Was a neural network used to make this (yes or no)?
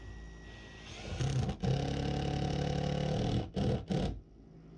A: no